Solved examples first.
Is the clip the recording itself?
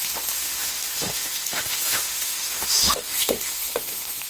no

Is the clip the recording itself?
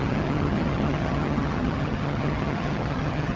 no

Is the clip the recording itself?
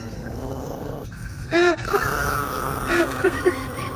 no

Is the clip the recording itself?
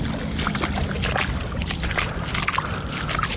yes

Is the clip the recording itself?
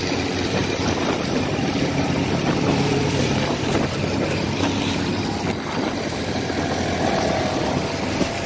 no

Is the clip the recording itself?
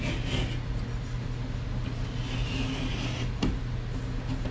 yes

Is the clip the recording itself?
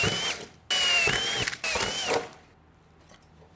yes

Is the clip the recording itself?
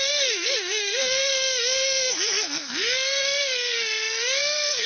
no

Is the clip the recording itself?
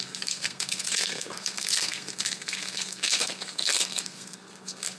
no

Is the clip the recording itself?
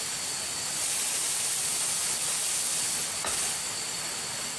yes